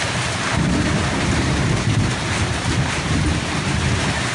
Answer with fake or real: fake